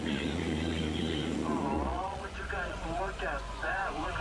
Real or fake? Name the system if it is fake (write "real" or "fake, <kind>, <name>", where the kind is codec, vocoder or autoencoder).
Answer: fake, vocoder, Vocos